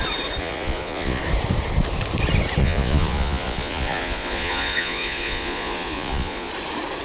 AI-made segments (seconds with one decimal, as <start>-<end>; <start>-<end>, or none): 0.4-1.2; 2.6-6.5